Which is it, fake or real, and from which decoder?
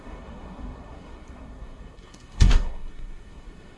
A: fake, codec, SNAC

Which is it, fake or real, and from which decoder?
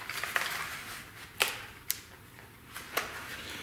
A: real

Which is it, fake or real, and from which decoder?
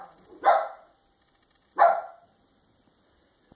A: real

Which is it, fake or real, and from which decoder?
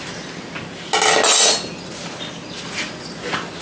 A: real